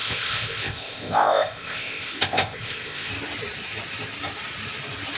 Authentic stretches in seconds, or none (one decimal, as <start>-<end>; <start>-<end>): 3.1-5.2